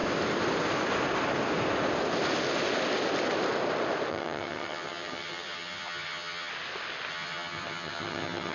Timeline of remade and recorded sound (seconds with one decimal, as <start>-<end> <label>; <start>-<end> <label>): 0.0-4.1 recorded; 4.1-6.5 remade; 6.5-7.1 recorded; 7.1-8.5 remade